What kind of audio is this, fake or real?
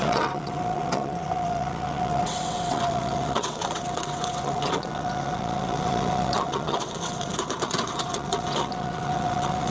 fake